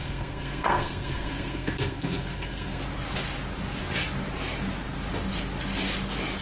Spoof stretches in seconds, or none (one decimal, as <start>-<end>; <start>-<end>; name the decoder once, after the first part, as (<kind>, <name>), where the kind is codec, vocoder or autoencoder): 0.0-2.8 (codec, SNAC)